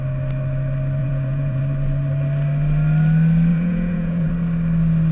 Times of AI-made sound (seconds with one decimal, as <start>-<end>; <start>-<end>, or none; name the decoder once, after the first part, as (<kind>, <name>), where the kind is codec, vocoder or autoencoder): 1.0-1.6 (vocoder, Vocos); 3.5-4.3